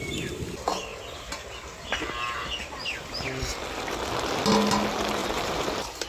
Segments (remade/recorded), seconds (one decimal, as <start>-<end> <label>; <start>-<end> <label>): 0.0-5.2 recorded; 5.2-6.1 remade